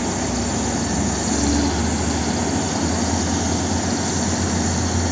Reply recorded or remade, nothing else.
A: recorded